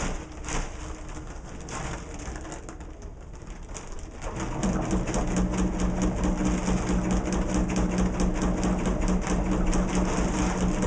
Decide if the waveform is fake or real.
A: real